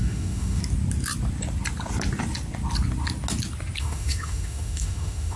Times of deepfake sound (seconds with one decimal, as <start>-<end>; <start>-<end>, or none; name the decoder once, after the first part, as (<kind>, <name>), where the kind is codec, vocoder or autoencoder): 0.0-0.6 (autoencoder, DAC-VAE); 3.8-5.4